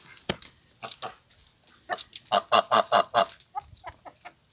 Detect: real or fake real